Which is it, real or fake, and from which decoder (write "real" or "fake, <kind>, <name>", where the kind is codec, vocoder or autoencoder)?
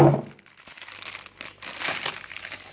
real